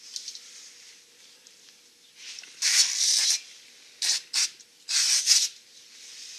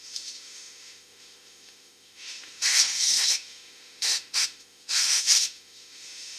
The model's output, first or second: second